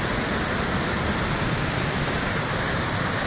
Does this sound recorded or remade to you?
recorded